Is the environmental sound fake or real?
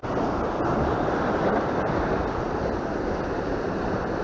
real